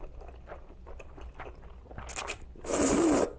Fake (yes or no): no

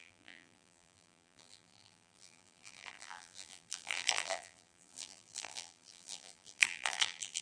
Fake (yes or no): yes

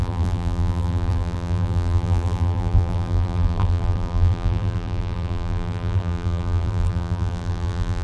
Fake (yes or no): yes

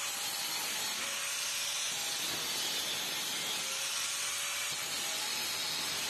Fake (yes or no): no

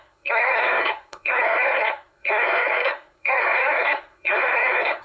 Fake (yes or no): yes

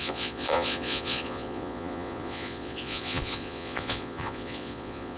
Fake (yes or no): yes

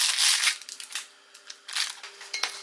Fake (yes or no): no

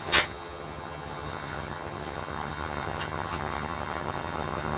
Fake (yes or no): yes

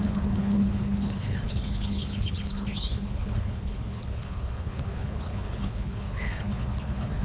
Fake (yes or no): yes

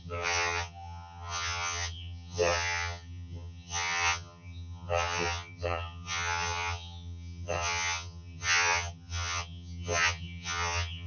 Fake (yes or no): yes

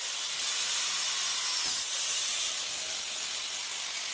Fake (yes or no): no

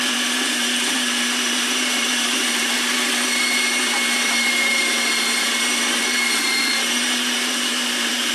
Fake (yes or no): yes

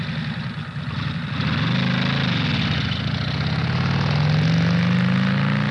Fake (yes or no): no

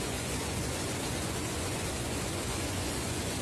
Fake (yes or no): yes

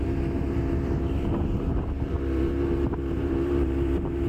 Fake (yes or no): yes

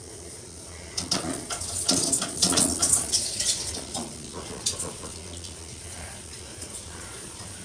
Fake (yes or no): yes